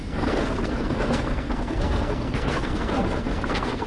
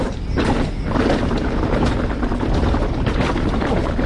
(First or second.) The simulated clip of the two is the first